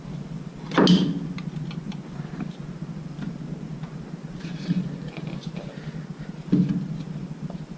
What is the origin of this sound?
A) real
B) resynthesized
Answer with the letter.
A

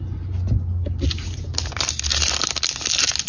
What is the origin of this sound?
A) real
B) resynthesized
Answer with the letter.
A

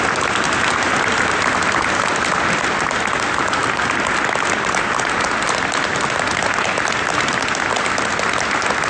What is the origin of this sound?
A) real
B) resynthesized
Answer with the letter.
A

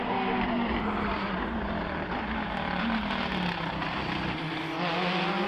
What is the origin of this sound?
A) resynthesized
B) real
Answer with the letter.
B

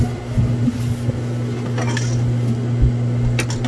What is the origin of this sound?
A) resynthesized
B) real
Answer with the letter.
B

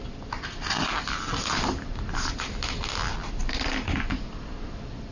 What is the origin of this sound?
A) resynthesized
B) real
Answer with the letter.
B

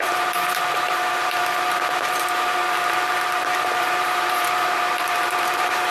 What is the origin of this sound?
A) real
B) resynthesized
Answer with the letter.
B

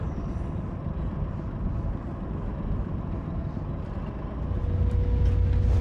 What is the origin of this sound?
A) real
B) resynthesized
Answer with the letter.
A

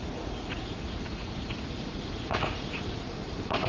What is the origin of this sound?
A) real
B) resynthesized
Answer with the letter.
B